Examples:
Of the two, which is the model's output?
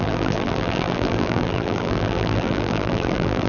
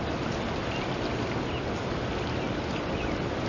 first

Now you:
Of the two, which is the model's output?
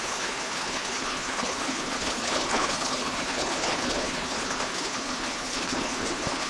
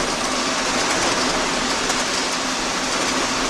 first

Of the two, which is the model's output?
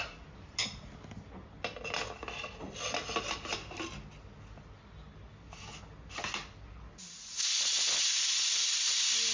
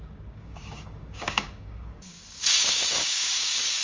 second